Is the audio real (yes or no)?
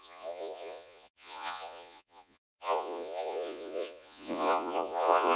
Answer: no